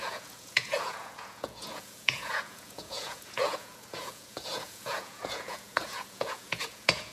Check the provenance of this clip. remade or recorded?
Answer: remade